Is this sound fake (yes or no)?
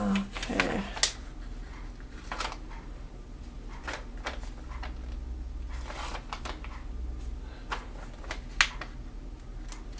no